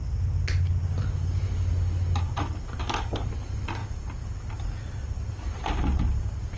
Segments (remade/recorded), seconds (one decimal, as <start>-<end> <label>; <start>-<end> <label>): 0.0-6.6 recorded